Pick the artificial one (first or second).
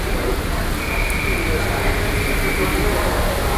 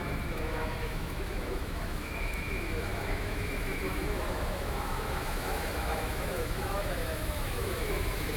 second